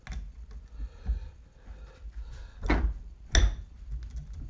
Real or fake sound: real